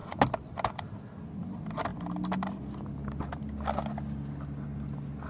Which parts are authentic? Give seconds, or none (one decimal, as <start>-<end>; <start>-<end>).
0.0-5.3